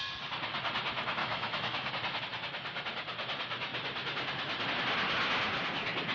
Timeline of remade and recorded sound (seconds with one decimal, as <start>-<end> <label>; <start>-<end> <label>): 0.0-1.2 recorded; 1.2-1.9 remade; 1.9-6.1 recorded

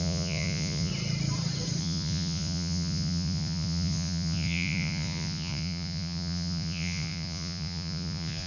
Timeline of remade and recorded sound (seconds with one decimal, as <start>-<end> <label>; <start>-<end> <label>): 0.0-0.9 remade; 0.9-1.8 recorded; 1.8-8.5 remade

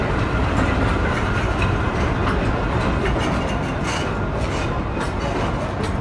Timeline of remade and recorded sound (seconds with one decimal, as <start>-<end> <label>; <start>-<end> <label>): 0.0-6.0 recorded

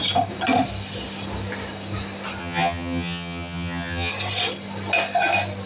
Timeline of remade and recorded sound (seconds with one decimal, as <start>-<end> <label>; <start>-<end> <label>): 0.0-2.4 recorded; 2.4-4.1 remade; 4.1-5.7 recorded